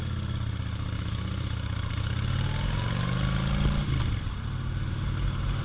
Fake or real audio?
real